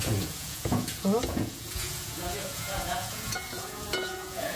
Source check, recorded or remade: remade